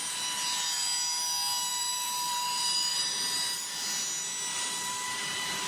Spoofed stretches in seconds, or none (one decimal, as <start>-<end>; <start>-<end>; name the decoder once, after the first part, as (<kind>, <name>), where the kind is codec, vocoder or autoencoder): 1.7-3.6 (vocoder, BigVGAN v2); 4.5-5.7